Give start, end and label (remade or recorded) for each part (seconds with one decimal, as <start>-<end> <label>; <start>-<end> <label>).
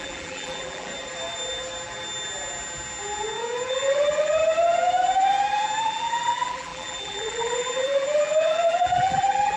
0.0-0.9 remade; 0.9-3.7 recorded; 3.7-4.4 remade; 4.4-5.8 recorded; 5.8-9.6 remade